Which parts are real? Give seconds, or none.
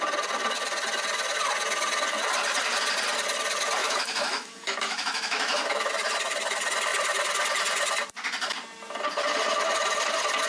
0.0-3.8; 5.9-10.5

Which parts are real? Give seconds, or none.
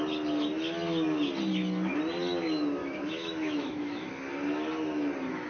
0.0-2.8; 4.1-5.5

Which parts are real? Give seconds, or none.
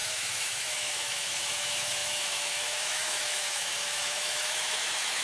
none